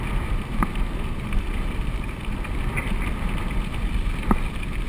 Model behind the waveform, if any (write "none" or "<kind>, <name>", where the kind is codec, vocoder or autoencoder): vocoder, BigVGAN v2